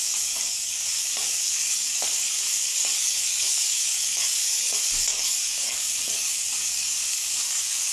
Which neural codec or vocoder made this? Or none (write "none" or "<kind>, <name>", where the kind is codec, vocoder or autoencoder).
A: codec, DAC